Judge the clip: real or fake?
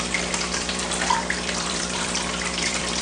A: fake